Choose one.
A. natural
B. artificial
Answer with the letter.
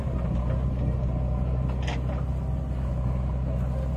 A